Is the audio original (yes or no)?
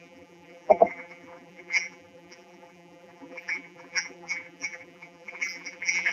no